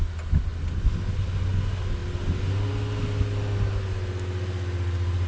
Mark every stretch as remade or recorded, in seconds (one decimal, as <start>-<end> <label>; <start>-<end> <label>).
0.0-5.3 recorded